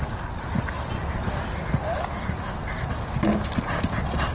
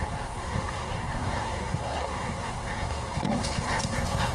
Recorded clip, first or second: first